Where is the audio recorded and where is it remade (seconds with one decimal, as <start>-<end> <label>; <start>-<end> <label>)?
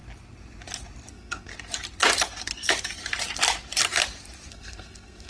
0.0-1.1 recorded; 1.1-1.5 remade; 1.5-4.5 recorded; 4.5-5.3 remade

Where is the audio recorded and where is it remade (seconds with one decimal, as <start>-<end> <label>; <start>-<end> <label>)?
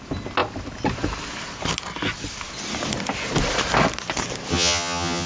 0.0-4.5 recorded; 4.5-5.3 remade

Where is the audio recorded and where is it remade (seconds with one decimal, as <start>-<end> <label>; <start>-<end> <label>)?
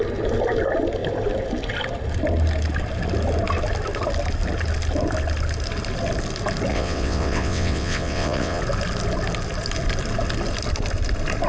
0.0-6.7 recorded; 6.7-8.6 remade; 8.6-11.5 recorded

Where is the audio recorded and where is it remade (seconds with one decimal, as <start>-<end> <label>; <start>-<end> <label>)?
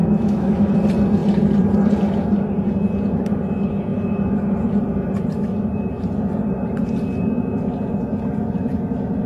0.0-0.7 remade; 0.7-9.3 recorded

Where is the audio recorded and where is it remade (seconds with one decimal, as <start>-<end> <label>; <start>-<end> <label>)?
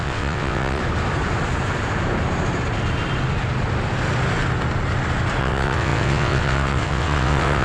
0.0-0.8 remade; 0.8-5.4 recorded; 5.4-7.6 remade